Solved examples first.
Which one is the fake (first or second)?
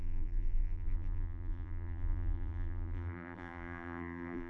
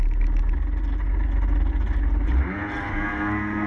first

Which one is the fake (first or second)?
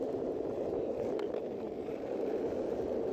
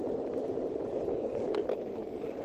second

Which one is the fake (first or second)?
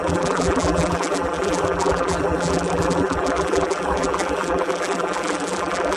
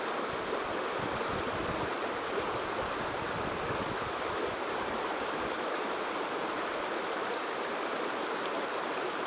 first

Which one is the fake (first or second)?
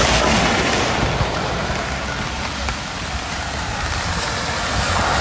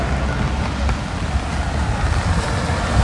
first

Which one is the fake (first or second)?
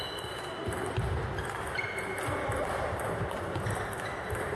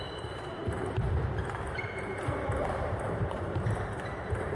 second